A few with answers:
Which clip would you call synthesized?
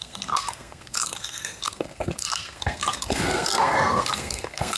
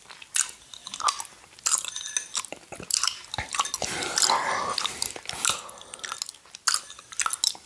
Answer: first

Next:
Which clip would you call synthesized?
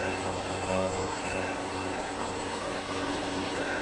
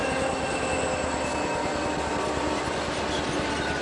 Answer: first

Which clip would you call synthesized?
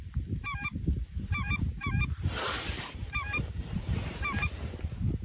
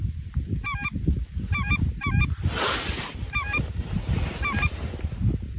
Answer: first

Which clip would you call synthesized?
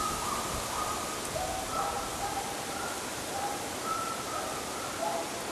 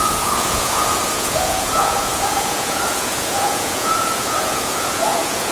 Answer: second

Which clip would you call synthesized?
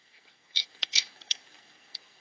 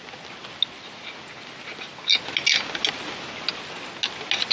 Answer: first